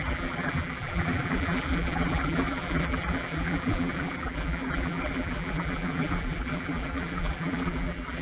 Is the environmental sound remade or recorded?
remade